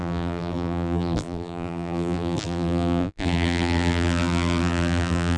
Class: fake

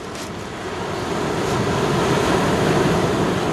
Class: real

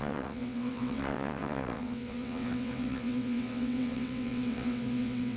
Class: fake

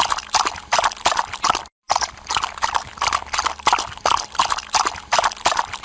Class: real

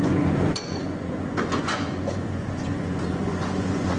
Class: fake